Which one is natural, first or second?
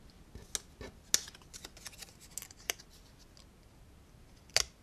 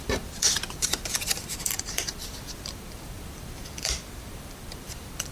first